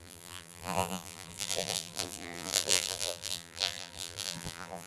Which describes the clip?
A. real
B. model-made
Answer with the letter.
B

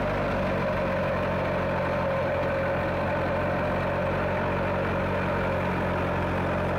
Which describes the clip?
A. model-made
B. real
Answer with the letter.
B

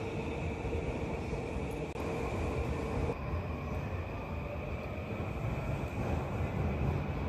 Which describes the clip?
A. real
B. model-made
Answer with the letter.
A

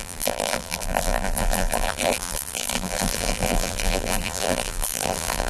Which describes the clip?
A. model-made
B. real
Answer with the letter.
A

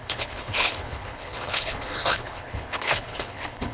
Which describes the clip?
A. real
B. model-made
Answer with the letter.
B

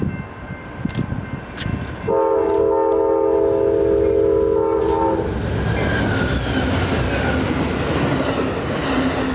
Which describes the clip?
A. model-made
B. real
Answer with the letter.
B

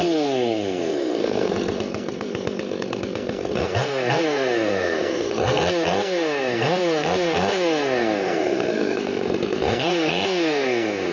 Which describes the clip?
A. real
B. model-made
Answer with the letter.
B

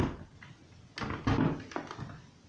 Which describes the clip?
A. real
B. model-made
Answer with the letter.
A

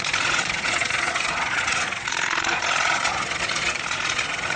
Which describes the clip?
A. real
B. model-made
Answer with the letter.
B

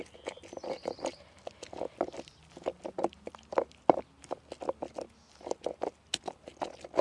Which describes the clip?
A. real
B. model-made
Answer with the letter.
A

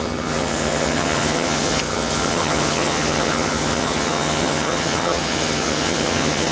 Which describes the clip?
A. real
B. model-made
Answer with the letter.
B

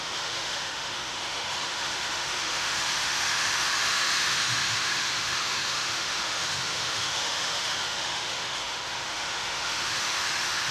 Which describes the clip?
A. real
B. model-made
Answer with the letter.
B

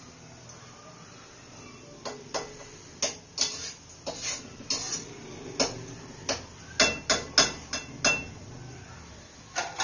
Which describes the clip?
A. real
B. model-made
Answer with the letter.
A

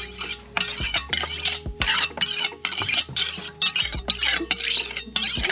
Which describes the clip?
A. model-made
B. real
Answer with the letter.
B